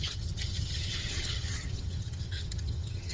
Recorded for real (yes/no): no